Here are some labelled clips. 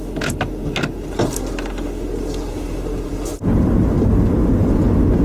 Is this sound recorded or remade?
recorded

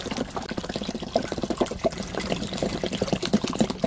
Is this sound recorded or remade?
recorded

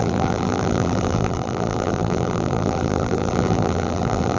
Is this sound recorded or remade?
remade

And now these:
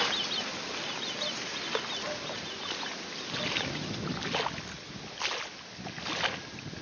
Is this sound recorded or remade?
recorded